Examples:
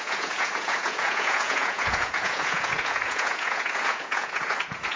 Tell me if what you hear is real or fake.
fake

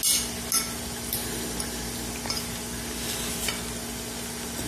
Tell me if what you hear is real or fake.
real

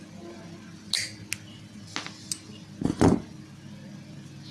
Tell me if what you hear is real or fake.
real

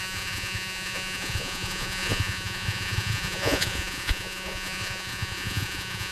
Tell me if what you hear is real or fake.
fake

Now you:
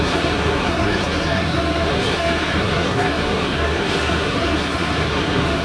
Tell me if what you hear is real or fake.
fake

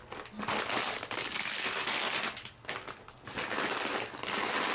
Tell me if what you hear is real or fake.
real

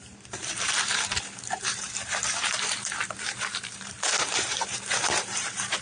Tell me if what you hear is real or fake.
fake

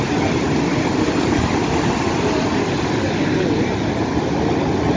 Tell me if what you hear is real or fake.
real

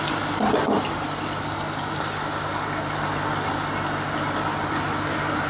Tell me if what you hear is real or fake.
real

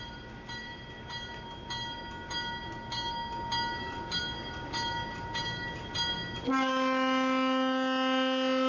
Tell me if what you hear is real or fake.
real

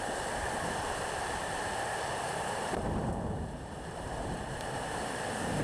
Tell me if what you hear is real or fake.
fake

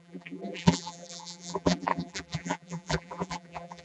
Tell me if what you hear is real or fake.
fake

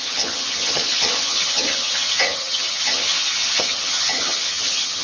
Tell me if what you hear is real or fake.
fake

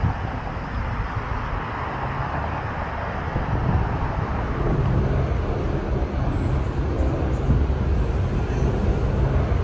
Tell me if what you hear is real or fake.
real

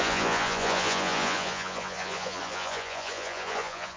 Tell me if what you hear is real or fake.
fake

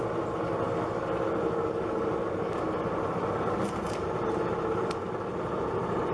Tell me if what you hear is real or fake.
real